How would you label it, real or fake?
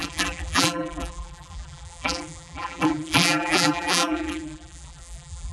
fake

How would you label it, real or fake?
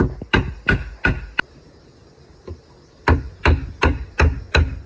real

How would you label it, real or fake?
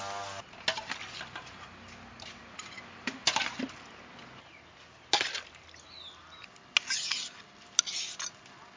real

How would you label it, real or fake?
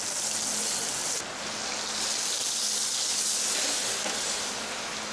real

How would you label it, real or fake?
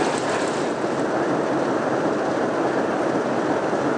real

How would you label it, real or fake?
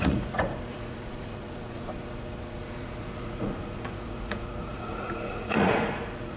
fake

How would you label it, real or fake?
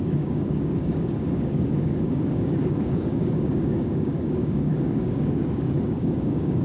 fake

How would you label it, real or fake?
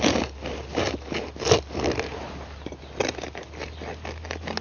real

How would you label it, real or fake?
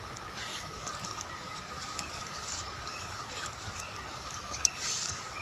fake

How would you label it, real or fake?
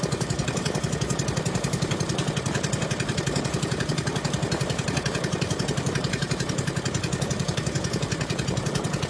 fake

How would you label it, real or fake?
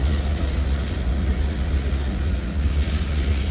fake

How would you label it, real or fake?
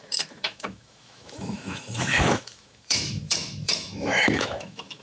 fake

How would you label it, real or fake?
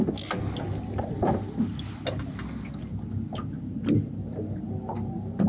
real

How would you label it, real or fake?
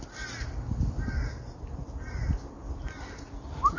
real